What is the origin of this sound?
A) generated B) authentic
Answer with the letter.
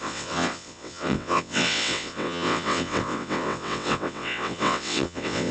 A